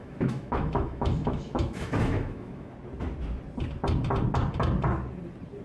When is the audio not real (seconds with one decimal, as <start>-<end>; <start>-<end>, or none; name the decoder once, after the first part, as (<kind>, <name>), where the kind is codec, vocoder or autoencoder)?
0.0-2.7 (autoencoder, DAC-VAE)